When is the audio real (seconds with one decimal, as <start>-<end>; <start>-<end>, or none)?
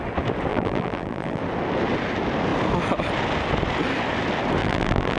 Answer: 0.0-0.5; 1.4-4.6